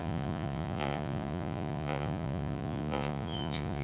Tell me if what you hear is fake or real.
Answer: fake